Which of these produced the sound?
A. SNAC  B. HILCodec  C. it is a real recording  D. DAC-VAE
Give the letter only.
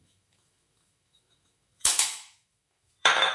D